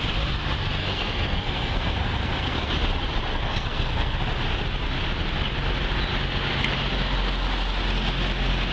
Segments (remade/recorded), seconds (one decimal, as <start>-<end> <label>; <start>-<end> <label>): 0.0-0.8 recorded; 0.8-2.7 remade; 2.7-3.3 recorded; 3.3-4.2 remade; 4.2-8.7 recorded